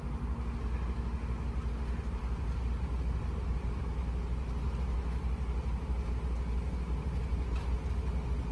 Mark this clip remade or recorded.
recorded